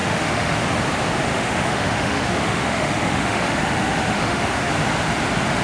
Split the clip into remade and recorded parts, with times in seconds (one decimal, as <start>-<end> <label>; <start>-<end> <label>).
0.0-0.6 remade; 0.6-1.3 recorded; 1.3-4.7 remade; 4.7-5.6 recorded